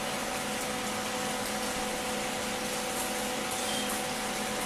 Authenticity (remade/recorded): recorded